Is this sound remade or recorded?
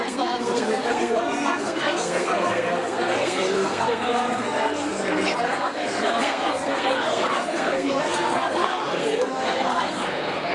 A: remade